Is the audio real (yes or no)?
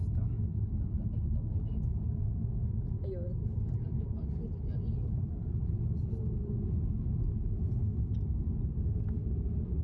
yes